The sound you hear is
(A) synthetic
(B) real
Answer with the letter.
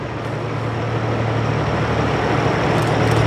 B